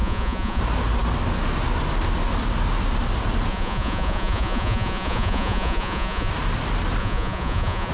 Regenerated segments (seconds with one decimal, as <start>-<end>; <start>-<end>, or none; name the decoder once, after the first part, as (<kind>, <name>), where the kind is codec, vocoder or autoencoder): 0.0-0.6 (vocoder, Vocos); 3.5-6.3; 7.0-7.9